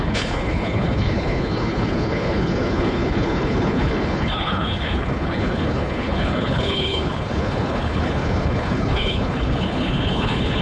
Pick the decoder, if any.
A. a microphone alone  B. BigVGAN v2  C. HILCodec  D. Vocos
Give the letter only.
C